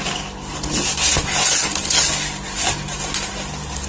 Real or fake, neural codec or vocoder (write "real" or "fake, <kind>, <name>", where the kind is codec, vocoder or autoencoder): real